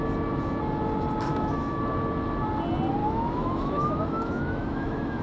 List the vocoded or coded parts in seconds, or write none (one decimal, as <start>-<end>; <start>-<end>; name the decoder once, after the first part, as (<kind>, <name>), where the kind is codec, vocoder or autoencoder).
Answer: 1.3-1.8 (autoencoder, DAC-VAE); 3.0-5.2